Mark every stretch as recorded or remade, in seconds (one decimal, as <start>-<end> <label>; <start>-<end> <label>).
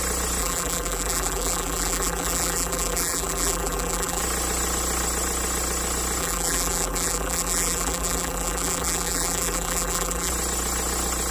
0.0-0.4 recorded; 0.4-4.2 remade; 4.2-6.2 recorded; 6.2-10.3 remade; 10.3-11.3 recorded